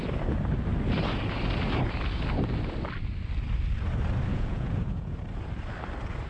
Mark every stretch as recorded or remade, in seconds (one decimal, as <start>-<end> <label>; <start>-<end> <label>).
0.0-4.3 recorded; 4.3-5.2 remade; 5.2-6.3 recorded